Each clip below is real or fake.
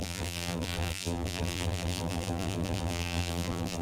fake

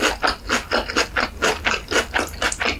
real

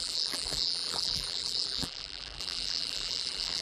fake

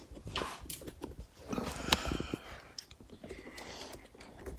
real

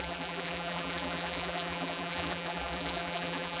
fake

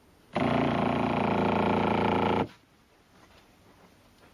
real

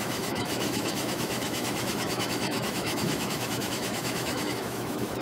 fake